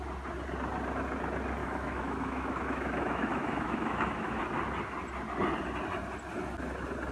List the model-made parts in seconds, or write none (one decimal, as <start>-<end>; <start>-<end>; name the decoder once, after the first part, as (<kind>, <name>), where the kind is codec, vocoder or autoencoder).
1.6-4.4 (autoencoder, DAC-VAE)